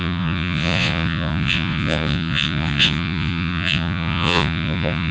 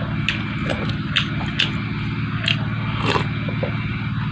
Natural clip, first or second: second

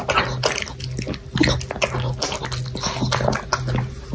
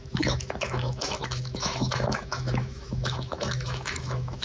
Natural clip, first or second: first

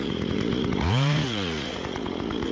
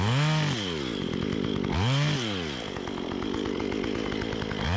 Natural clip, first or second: second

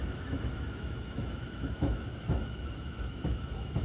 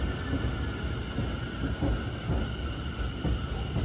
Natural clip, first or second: second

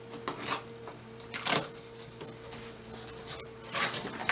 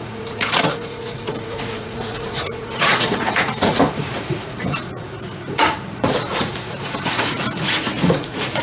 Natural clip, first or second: first